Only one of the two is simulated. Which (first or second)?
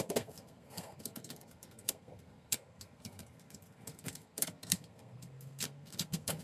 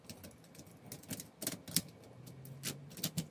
first